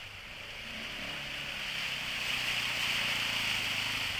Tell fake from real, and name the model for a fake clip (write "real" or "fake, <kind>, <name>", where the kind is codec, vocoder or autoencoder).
real